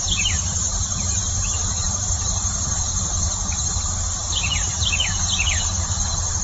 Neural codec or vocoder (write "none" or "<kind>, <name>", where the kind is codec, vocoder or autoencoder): vocoder, BigVGAN v2